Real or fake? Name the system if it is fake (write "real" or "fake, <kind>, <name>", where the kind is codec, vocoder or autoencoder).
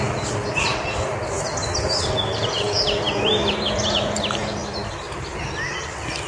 real